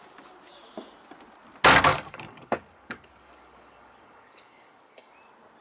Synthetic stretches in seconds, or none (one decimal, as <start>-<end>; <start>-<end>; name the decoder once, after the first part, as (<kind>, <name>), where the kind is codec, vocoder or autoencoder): 1.9-5.1 (codec, DAC)